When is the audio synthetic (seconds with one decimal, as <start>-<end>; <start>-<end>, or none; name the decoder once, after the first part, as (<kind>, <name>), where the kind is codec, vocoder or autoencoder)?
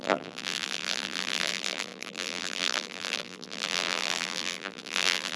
0.0-5.4 (vocoder, BigVGAN v2)